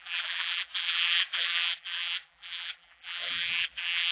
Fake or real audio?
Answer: fake